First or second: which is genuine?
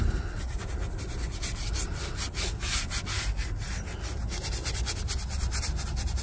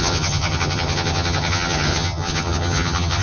first